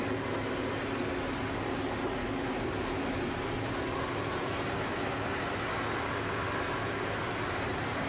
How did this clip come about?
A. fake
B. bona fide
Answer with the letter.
B